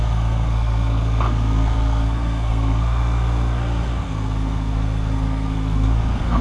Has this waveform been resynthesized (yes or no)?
yes